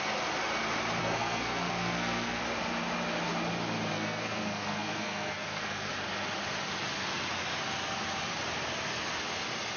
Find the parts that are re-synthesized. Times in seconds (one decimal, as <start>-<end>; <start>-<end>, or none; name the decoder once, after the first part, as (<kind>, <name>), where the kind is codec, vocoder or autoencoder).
1.0-2.4 (codec, SNAC); 3.9-5.9

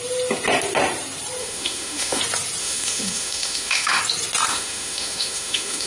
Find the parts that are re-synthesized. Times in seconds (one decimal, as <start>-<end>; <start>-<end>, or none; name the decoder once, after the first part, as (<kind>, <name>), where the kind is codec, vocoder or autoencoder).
1.4-2.2 (autoencoder, DAC-VAE); 2.6-4.0; 4.5-5.9

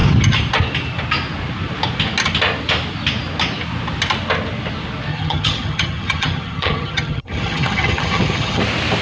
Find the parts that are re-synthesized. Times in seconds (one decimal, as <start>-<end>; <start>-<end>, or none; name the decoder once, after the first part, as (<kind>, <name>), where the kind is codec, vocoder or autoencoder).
5.1-8.6 (vocoder, HiFi-GAN)

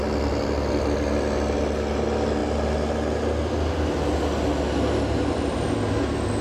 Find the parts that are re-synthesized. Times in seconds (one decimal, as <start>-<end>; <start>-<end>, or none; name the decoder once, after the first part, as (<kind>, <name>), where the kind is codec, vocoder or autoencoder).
none

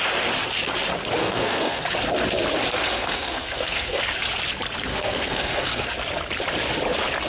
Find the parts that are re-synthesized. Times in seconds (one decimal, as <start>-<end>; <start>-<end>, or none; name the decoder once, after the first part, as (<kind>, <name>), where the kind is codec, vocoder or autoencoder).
1.2-1.8 (codec, SNAC); 2.8-4.0; 4.9-5.9

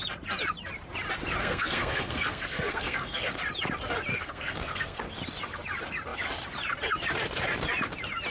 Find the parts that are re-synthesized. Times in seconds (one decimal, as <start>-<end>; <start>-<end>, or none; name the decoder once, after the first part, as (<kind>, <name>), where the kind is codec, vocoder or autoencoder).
1.4-3.4 (codec, SNAC); 4.1-5.0

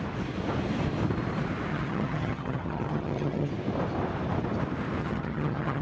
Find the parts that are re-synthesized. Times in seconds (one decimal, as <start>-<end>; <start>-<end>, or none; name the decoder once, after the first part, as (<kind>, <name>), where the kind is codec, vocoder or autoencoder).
1.7-3.5 (vocoder, HiFi-GAN); 5.0-5.8